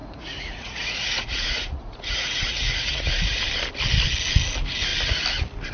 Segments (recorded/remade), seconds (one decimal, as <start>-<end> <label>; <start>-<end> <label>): 0.0-3.4 remade; 3.4-5.7 recorded